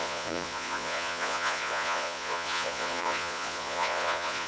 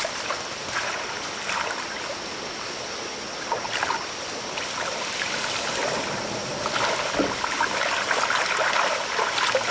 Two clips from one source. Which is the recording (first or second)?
second